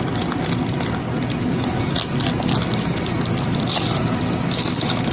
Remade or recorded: recorded